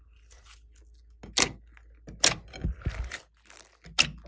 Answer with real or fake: real